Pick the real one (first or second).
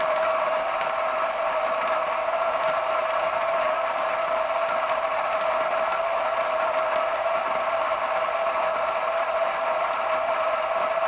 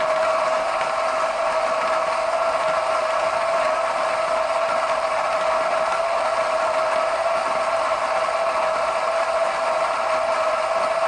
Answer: second